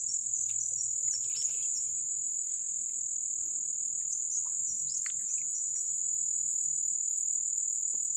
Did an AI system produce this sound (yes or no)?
no